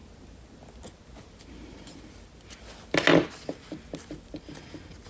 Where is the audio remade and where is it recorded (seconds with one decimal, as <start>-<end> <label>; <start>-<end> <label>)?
0.0-5.1 recorded